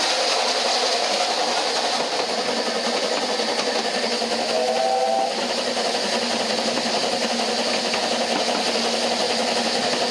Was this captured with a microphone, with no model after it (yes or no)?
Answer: yes